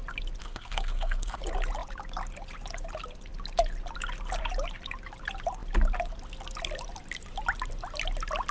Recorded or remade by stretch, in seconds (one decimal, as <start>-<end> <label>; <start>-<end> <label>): 0.0-0.4 recorded; 0.4-1.4 remade; 1.4-8.5 recorded